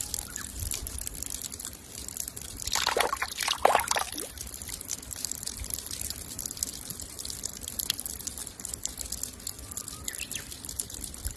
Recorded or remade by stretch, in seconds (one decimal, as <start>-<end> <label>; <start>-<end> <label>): 0.0-8.4 remade; 8.4-10.0 recorded; 10.0-11.4 remade